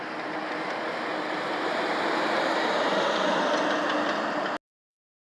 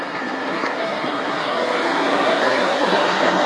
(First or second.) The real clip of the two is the first